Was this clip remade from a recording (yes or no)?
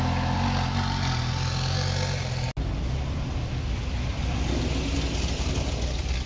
no